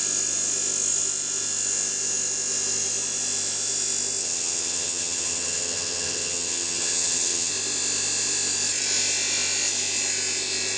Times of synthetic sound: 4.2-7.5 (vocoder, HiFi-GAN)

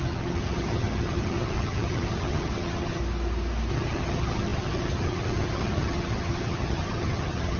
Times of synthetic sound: 0.0-3.0 (vocoder, HiFi-GAN); 3.7-7.6

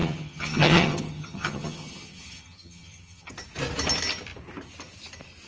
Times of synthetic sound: 0.0-3.3 (vocoder, HiFi-GAN)